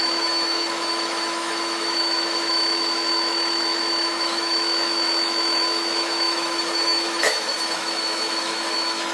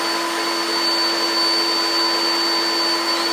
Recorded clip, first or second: second